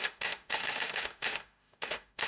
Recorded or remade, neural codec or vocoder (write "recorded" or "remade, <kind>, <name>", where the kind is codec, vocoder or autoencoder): remade, autoencoder, DAC-VAE